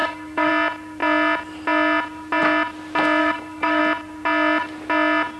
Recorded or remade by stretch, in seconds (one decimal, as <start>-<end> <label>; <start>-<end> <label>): 0.0-0.5 remade; 0.5-3.2 recorded; 3.2-3.8 remade; 3.8-5.4 recorded